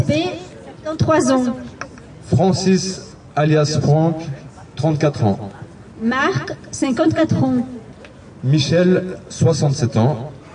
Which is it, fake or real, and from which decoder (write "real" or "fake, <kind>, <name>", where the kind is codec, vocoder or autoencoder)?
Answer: real